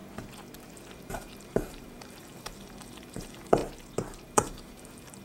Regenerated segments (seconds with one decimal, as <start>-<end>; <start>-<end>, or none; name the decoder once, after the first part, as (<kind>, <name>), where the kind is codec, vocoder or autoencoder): 0.9-3.6 (vocoder, BigVGAN v2); 4.2-5.2